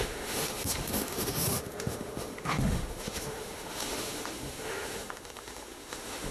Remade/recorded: remade